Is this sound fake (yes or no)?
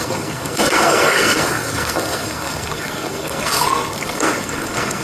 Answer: yes